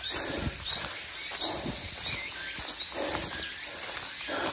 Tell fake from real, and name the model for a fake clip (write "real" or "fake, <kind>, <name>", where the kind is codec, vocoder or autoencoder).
real